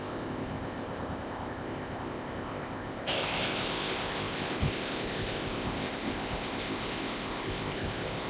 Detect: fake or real fake